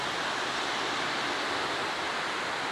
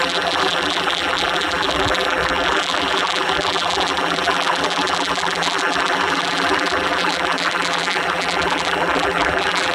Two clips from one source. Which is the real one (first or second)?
first